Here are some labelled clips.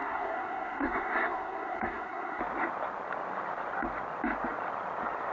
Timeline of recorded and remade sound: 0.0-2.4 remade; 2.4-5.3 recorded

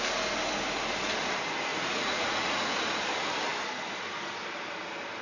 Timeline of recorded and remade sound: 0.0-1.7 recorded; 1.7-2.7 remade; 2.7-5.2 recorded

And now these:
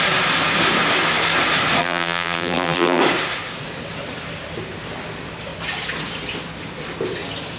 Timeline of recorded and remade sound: 0.0-1.8 recorded; 1.8-3.0 remade; 3.0-7.6 recorded

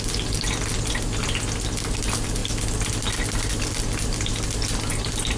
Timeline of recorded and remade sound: 0.0-5.4 recorded

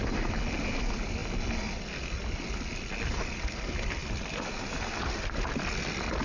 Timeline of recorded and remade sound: 0.0-6.2 recorded

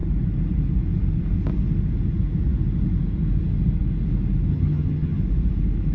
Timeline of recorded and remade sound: 0.0-4.5 recorded; 4.5-5.2 remade; 5.2-5.9 recorded

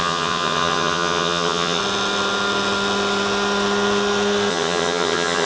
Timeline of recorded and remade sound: 0.0-1.8 remade; 1.8-4.5 recorded; 4.5-5.5 remade